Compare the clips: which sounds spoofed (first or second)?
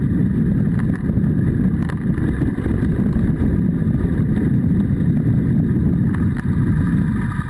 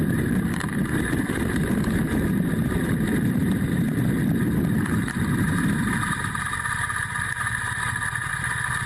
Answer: second